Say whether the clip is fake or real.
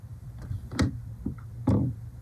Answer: fake